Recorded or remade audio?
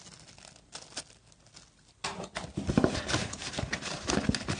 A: recorded